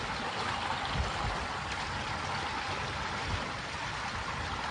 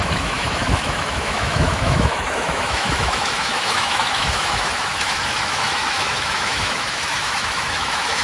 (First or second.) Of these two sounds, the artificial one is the second